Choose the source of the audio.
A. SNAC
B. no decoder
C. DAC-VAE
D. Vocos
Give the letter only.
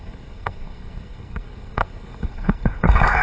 A